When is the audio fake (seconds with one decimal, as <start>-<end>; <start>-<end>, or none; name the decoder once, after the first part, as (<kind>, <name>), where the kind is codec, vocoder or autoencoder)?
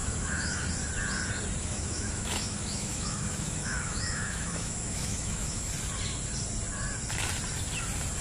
0.0-0.6 (autoencoder, DAC-VAE); 1.6-5.7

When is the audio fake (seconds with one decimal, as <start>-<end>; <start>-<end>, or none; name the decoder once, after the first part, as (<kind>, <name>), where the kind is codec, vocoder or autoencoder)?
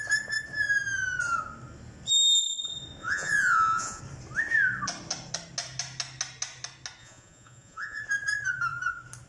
3.0-4.0 (vocoder, Vocos); 7.0-8.0